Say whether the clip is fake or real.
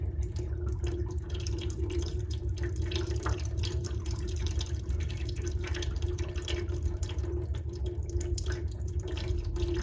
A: fake